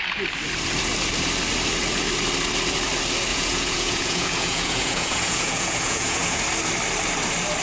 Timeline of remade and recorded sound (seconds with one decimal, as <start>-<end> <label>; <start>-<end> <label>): 0.0-3.3 recorded; 3.3-6.4 remade; 6.4-7.6 recorded